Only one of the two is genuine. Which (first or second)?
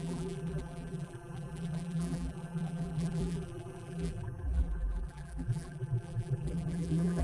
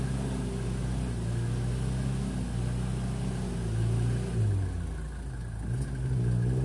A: second